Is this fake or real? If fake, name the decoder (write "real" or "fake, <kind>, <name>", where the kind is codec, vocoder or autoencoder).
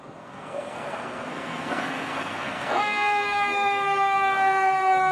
fake, codec, SNAC